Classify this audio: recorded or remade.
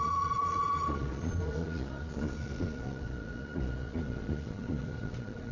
remade